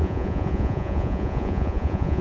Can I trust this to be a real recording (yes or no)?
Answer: no